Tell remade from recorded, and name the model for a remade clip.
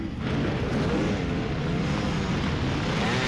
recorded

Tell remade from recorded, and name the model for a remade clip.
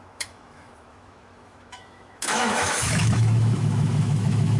remade, autoencoder, DAC-VAE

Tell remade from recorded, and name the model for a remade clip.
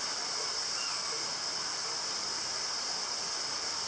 recorded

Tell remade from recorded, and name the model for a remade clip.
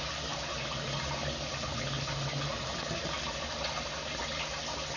recorded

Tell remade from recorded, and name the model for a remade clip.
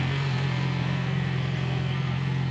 remade, codec, SNAC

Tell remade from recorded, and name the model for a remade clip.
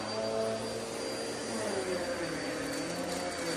recorded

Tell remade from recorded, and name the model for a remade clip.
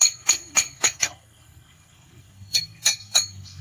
remade, codec, SNAC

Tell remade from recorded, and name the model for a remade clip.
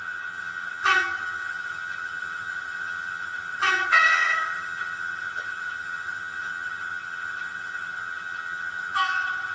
remade, vocoder, HiFi-GAN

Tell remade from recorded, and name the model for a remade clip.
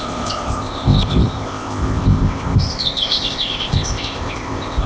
remade, codec, ZipCodec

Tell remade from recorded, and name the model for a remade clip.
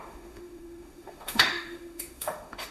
remade, autoencoder, DAC-VAE